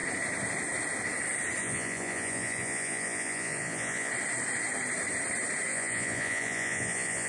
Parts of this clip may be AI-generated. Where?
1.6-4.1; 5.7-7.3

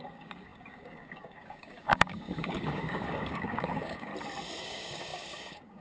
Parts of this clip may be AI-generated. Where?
0.0-4.1; 4.6-5.8

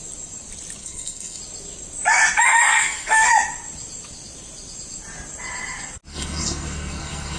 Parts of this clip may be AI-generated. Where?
0.8-1.4; 2.7-3.3; 6.1-7.4

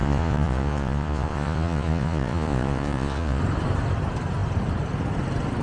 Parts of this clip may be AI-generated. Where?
0.0-3.4

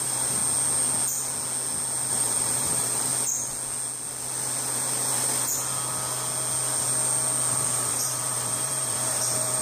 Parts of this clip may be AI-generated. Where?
0.0-0.4; 2.1-3.1; 7.5-9.6

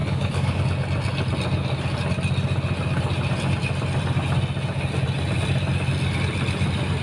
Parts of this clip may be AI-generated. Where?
0.0-0.6